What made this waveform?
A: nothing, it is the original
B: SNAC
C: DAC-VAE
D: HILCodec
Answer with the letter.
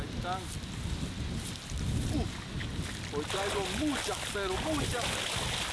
A